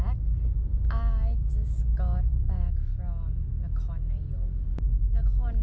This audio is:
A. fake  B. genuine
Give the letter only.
B